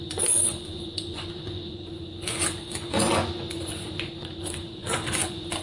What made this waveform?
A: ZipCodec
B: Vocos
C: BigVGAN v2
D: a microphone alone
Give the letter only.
B